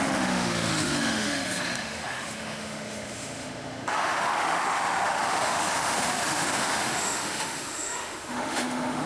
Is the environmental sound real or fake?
fake